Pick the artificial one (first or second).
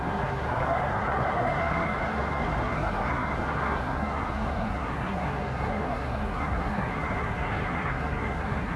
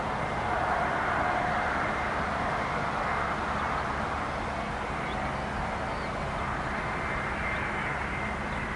first